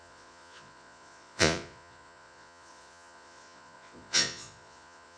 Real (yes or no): no